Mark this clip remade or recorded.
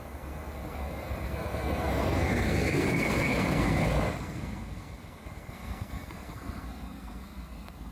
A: remade